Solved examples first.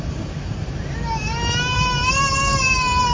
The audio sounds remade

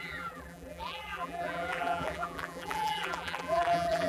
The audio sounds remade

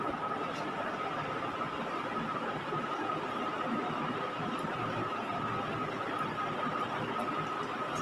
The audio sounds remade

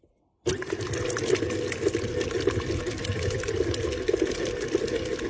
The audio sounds recorded